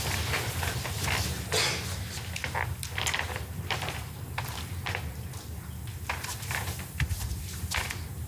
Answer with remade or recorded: recorded